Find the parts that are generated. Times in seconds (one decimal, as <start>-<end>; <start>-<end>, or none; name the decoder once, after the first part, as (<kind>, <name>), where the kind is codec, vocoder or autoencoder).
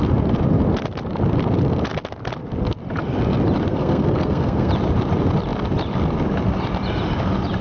3.7-4.7 (codec, SNAC)